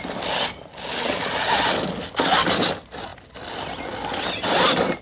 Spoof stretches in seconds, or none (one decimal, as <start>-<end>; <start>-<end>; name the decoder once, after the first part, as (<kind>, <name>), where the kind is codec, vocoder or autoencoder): none